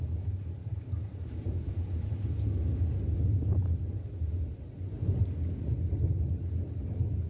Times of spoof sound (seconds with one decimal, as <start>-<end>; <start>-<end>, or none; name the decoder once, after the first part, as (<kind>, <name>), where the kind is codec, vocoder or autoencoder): none